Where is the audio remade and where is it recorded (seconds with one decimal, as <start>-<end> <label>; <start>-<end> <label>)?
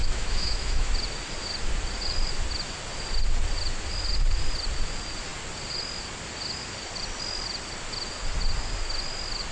0.0-0.9 remade; 0.9-9.5 recorded